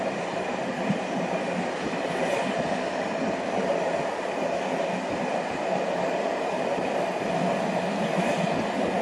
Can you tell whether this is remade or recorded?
remade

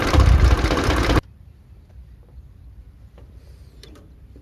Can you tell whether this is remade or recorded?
remade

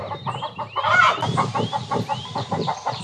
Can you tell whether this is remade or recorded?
remade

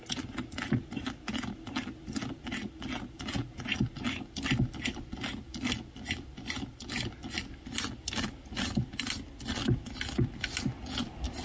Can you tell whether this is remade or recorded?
recorded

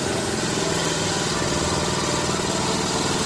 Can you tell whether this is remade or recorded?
recorded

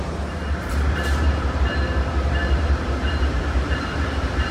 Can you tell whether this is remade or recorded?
remade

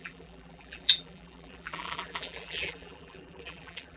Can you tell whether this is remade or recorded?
remade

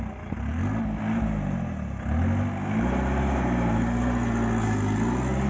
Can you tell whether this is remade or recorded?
recorded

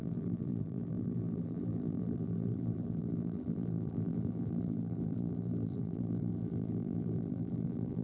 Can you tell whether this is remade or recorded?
remade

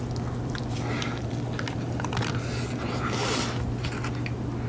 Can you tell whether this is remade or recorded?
recorded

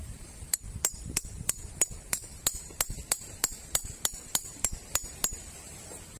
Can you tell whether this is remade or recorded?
remade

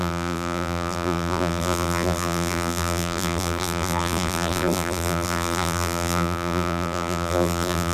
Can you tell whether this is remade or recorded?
remade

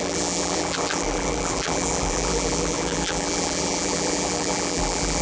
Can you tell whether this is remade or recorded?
remade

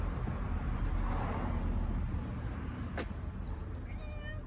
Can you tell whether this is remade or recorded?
recorded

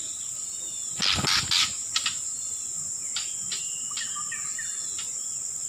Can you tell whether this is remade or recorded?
recorded